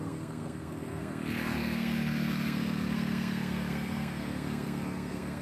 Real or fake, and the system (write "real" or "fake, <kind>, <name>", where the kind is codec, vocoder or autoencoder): fake, codec, SNAC